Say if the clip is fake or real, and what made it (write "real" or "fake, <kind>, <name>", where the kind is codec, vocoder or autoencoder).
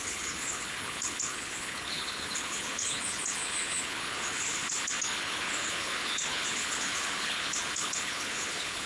fake, codec, HILCodec